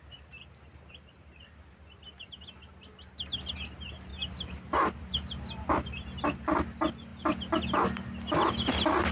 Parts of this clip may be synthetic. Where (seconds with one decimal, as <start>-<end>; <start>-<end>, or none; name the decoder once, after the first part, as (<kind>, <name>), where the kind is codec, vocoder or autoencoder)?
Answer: none